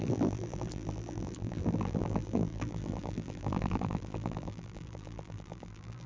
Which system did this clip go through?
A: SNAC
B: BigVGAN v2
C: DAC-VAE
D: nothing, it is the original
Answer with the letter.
B